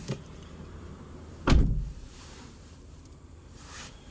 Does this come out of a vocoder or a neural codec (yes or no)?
yes